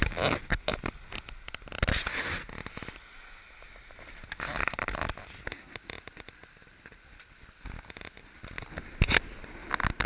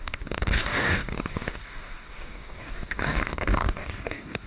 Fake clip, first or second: second